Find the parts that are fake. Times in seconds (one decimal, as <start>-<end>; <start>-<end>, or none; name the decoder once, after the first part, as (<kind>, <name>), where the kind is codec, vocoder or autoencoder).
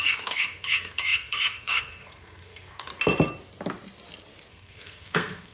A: 0.0-2.9 (codec, SNAC); 4.5-5.5